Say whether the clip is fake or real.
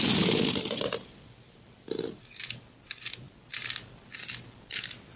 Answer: real